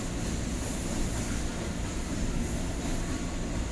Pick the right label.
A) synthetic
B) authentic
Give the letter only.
B